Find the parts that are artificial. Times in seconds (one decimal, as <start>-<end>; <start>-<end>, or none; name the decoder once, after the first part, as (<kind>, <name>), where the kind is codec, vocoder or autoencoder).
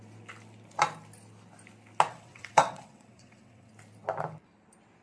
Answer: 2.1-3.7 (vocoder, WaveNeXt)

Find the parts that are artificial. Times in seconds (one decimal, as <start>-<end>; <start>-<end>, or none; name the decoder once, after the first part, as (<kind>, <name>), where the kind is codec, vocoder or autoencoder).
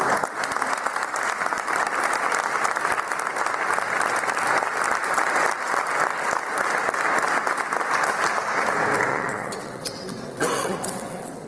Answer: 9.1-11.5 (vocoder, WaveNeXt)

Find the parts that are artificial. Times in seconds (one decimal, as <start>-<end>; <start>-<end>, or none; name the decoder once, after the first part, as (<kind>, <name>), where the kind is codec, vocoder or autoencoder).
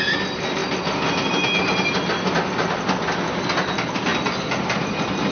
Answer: none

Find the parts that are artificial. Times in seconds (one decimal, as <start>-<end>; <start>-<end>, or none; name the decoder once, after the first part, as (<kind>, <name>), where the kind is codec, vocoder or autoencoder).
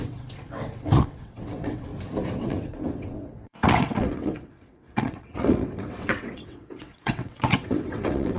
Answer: 0.0-1.9 (vocoder, WaveNeXt); 2.4-8.4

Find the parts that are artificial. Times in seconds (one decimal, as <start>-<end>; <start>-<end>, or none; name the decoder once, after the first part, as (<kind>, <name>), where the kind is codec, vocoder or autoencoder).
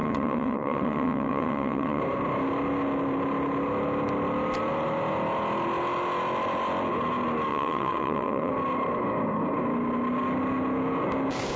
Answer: 0.0-2.0 (vocoder, WaveNeXt); 7.5-8.5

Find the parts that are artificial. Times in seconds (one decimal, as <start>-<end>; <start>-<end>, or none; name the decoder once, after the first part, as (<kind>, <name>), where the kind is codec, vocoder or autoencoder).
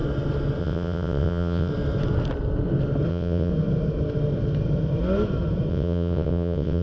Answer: 0.6-1.7 (vocoder, WaveNeXt); 3.1-3.5; 5.7-6.8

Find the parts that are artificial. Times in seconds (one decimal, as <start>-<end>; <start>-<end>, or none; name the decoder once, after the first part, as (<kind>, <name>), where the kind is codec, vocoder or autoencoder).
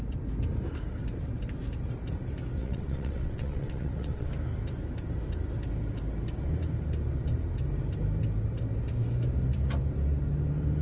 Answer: 2.6-4.3 (vocoder, WaveNeXt)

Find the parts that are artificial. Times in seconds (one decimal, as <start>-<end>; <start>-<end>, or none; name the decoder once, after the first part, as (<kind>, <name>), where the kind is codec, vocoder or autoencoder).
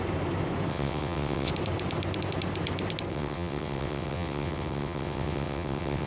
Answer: 0.7-1.5 (vocoder, WaveNeXt); 3.1-6.1